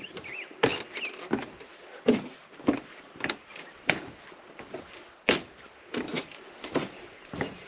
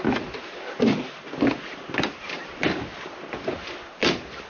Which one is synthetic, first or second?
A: first